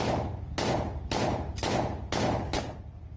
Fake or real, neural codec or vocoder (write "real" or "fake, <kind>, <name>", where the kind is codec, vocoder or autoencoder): real